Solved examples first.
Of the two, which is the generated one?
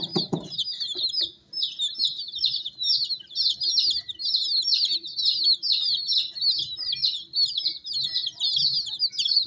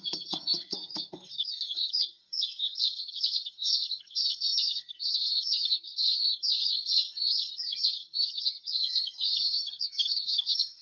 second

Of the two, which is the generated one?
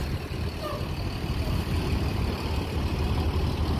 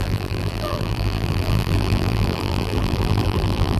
second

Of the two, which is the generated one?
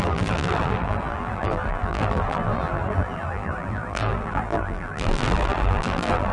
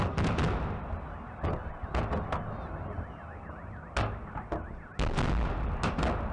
first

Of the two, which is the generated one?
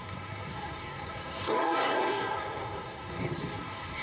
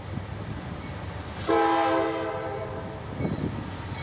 first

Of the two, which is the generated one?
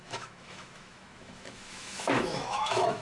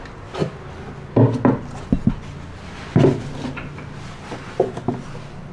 first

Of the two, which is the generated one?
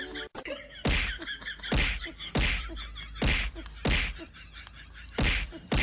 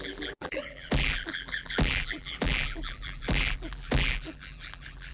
second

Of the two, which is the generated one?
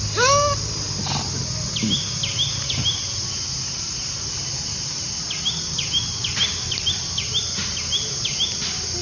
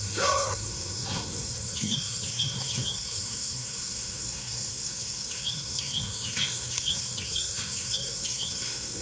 second